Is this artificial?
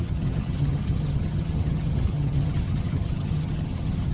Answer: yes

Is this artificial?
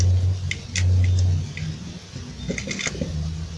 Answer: no